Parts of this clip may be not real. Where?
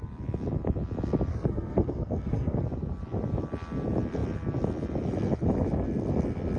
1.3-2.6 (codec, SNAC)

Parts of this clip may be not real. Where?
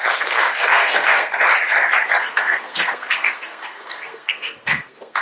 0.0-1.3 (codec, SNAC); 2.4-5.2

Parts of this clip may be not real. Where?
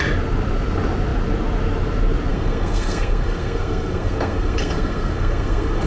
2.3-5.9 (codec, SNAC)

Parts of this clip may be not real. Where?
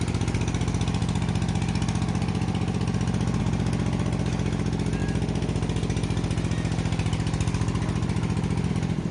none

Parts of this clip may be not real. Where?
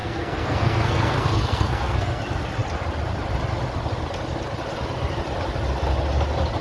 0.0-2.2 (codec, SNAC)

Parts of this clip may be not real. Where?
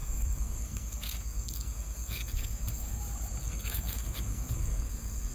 0.0-3.0 (codec, SNAC); 3.4-5.3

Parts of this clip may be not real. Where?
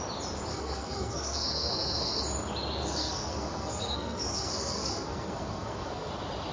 0.5-2.2 (codec, SNAC); 2.8-6.1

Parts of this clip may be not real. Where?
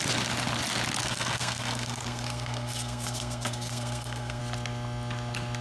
1.0-4.4 (codec, SNAC)